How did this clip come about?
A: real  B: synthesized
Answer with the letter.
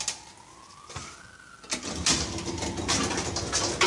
A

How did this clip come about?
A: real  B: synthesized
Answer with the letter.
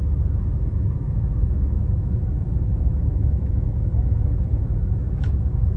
B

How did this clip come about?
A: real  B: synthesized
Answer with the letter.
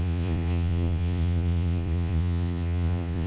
B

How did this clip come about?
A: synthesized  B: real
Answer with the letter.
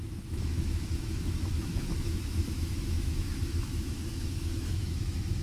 A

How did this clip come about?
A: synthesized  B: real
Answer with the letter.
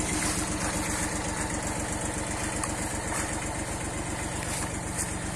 B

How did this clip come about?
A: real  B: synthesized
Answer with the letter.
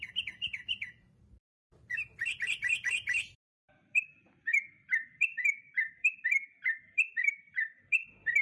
B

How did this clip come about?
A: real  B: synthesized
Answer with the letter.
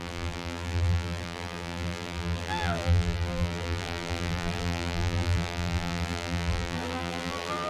B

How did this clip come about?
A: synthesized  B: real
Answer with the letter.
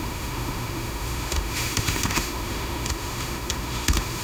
A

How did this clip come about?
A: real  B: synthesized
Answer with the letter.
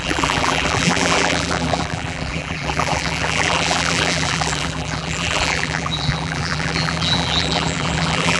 B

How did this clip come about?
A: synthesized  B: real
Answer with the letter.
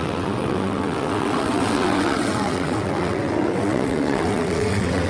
A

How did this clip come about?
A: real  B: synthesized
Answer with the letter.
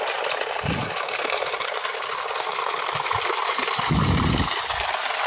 A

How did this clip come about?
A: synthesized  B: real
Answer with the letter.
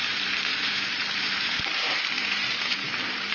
A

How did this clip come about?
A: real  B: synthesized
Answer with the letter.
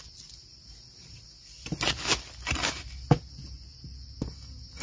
A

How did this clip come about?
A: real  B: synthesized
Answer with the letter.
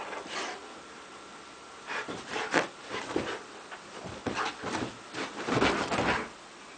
A